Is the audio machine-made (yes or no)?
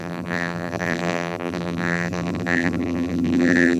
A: yes